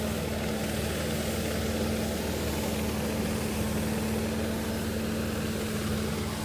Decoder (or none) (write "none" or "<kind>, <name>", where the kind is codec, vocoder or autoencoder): none